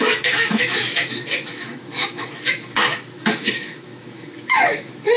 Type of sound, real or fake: fake